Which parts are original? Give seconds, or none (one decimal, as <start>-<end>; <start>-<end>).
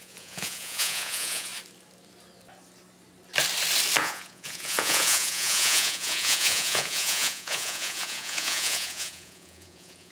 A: 1.5-4.0